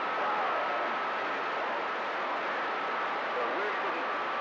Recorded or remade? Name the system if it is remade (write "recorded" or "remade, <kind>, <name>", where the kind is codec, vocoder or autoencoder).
recorded